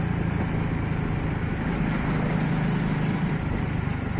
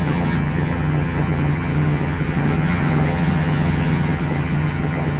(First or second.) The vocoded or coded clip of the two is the second